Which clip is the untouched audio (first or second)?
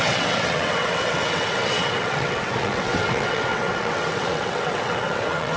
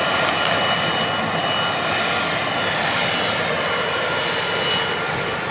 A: second